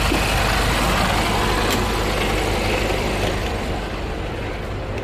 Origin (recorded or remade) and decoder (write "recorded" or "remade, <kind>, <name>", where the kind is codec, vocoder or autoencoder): recorded